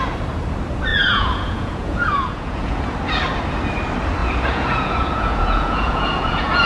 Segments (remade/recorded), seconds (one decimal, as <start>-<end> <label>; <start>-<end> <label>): 0.0-0.9 recorded; 0.9-2.8 remade; 2.8-4.2 recorded; 4.2-6.7 remade